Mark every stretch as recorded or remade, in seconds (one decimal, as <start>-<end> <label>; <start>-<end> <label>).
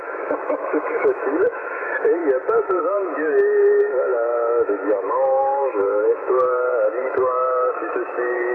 0.0-2.2 remade; 2.2-2.8 recorded; 2.8-8.5 remade